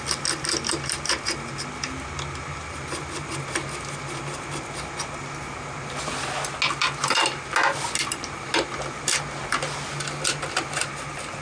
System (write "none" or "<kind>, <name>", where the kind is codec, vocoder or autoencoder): none